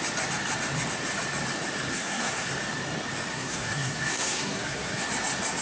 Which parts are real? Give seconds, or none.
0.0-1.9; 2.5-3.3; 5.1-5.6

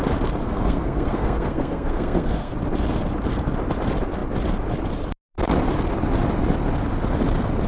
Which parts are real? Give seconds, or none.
0.0-0.4; 2.5-7.7